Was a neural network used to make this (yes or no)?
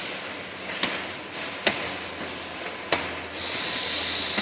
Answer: no